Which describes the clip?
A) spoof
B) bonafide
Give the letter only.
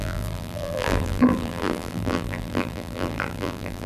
A